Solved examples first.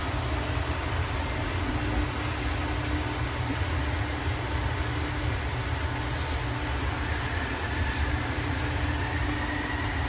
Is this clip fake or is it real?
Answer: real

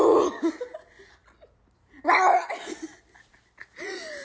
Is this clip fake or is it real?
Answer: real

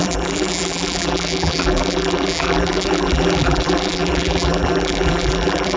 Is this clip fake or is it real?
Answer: fake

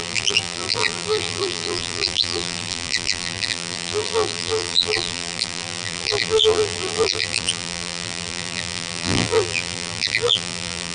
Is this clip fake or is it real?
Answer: fake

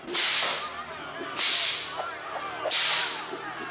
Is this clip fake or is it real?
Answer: fake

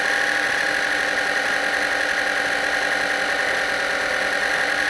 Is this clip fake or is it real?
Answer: real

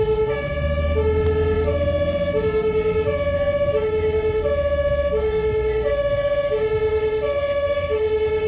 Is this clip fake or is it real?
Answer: real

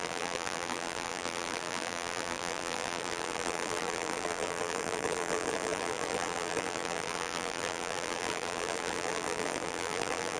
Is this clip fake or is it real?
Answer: fake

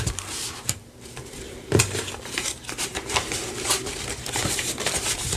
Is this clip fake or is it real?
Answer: fake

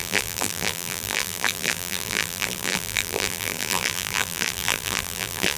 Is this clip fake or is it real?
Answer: fake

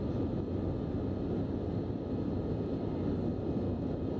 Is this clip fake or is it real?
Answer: real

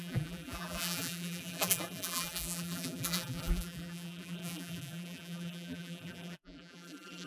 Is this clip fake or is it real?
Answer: fake